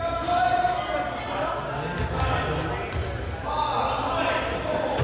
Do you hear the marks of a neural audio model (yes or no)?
no